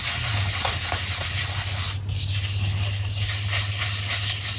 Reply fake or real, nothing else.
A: real